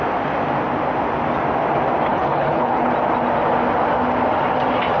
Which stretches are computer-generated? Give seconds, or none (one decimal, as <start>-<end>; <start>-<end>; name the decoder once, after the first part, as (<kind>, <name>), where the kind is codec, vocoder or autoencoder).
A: 2.1-2.9 (codec, HILCodec)